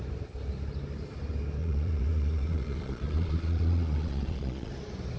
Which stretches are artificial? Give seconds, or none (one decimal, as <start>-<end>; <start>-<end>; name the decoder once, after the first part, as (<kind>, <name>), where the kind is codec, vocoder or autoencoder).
1.6-4.7 (vocoder, Vocos)